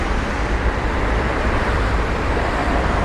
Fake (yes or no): yes